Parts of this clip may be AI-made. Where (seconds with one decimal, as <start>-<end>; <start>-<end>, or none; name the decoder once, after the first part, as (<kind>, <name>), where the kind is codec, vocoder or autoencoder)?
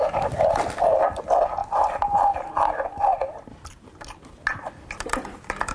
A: none